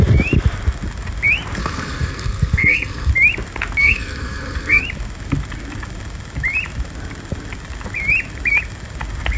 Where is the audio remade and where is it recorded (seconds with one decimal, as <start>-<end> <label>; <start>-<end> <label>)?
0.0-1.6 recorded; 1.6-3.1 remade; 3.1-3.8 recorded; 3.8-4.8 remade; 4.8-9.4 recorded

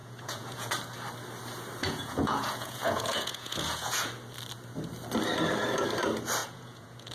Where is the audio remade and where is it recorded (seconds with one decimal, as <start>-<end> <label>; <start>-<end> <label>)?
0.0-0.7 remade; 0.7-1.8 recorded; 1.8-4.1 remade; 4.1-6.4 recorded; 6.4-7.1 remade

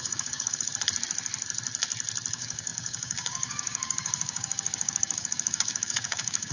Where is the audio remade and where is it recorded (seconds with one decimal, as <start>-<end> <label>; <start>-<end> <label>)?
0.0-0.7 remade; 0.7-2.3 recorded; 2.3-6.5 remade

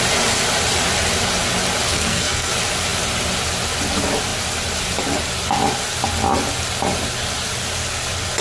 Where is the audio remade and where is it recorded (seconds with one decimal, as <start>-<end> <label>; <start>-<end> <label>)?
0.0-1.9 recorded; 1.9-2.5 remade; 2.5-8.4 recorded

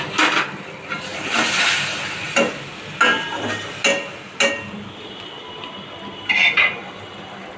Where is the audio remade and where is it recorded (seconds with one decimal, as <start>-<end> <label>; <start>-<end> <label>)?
0.0-7.6 recorded